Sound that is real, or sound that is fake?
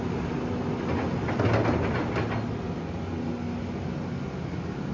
real